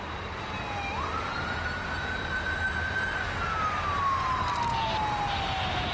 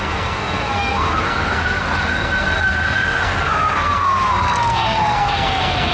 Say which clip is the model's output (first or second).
second